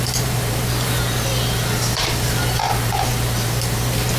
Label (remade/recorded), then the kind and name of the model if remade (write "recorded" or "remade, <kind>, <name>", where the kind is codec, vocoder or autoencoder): remade, vocoder, BigVGAN v2